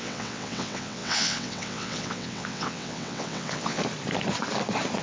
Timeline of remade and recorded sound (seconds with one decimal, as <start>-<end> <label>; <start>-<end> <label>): 0.0-3.8 remade; 3.8-5.0 recorded